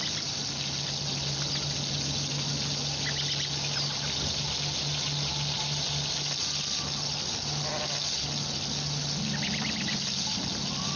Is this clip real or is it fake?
real